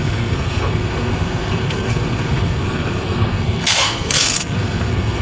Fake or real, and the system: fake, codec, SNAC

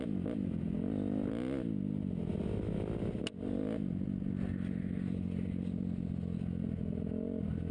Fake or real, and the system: real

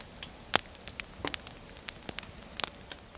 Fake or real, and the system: real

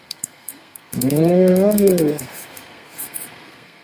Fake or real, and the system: fake, codec, SNAC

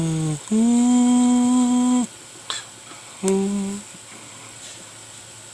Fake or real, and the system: real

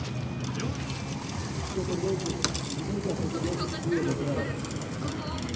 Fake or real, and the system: real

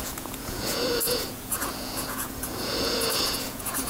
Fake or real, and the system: fake, vocoder, Vocos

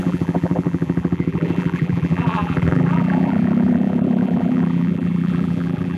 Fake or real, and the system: fake, vocoder, BigVGAN v2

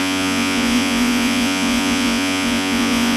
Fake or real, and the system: fake, vocoder, Vocos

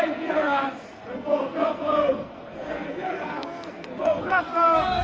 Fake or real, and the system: fake, codec, SNAC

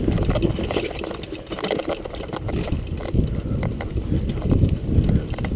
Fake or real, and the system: real